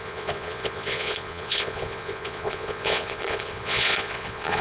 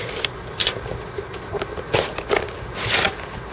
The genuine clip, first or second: second